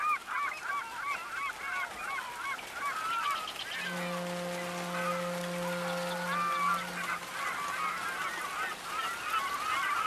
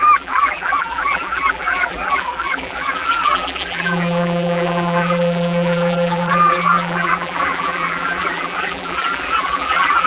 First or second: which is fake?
second